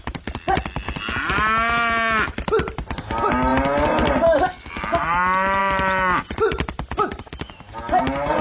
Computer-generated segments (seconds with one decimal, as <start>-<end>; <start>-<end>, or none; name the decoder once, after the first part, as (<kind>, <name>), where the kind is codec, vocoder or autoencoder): none